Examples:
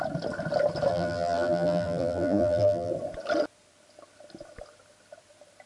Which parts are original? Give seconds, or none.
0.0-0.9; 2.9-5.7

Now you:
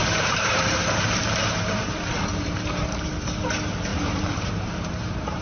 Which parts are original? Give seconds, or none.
3.1-3.9

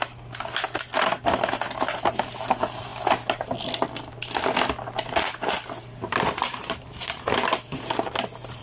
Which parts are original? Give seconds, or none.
0.0-5.8